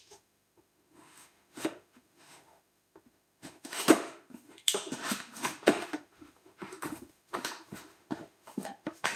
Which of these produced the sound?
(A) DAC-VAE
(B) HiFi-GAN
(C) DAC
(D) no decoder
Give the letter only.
A